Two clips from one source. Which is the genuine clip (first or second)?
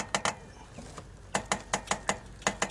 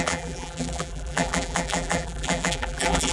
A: first